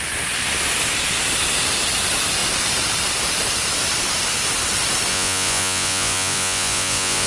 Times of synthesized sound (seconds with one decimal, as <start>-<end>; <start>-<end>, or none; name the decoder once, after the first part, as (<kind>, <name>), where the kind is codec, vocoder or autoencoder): 5.1-7.3 (vocoder, Vocos)